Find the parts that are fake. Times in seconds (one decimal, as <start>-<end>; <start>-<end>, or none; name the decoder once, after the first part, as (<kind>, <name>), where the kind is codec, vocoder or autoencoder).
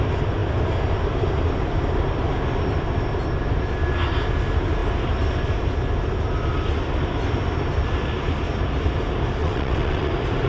9.4-10.1 (vocoder, WaveNeXt)